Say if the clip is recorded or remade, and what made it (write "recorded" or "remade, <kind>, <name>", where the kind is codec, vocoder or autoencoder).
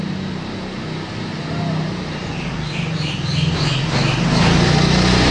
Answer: recorded